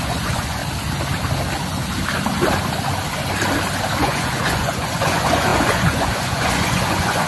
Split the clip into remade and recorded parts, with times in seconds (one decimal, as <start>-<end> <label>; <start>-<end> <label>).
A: 0.0-0.6 remade; 0.6-4.0 recorded; 4.0-7.3 remade